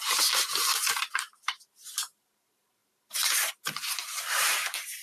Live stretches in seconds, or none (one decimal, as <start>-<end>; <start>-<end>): 0.5-1.1